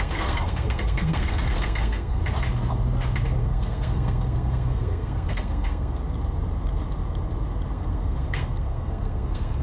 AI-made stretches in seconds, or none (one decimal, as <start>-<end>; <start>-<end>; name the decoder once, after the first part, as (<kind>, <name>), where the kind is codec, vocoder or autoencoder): 0.0-2.2 (codec, SNAC); 3.4-6.0; 7.7-9.6